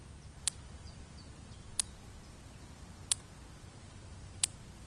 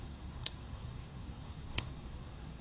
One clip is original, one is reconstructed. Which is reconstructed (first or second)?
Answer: second